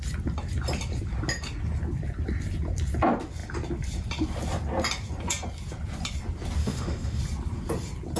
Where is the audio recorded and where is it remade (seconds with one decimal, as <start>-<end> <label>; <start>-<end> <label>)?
0.0-6.6 recorded; 6.6-7.2 remade; 7.2-8.2 recorded